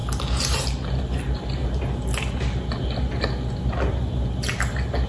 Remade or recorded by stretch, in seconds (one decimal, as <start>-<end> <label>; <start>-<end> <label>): 0.0-5.1 recorded